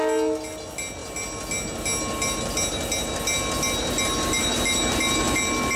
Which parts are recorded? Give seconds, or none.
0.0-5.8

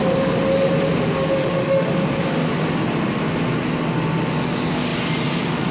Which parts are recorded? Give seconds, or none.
0.0-1.4; 1.9-5.7

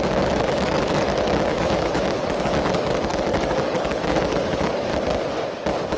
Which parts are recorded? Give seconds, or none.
4.9-6.0

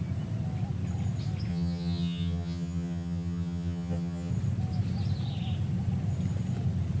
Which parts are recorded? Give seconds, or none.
0.0-1.5; 4.3-7.0

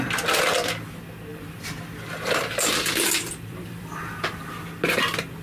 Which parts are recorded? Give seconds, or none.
0.0-1.3; 4.5-5.4

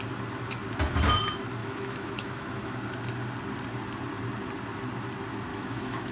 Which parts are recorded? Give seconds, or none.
0.0-1.6; 2.7-5.5